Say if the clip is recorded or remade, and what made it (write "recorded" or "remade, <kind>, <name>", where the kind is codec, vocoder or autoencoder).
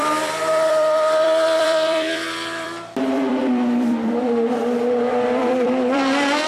remade, vocoder, BigVGAN v2